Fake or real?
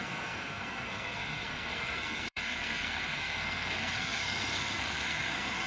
fake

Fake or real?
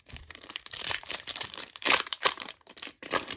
fake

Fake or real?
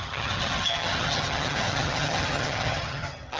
fake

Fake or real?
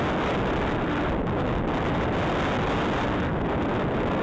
real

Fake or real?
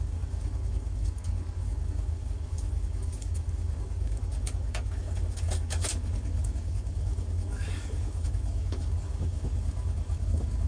fake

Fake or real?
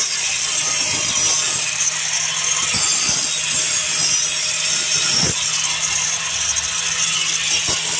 real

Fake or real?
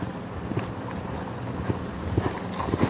real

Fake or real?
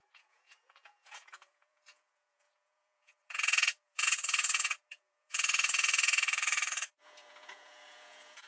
fake